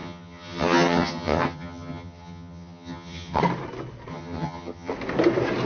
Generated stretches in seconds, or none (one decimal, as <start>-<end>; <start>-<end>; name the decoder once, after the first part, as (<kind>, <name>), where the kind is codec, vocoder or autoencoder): 0.0-3.4 (vocoder, HiFi-GAN); 4.1-4.9